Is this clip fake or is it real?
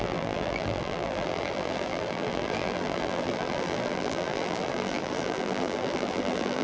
fake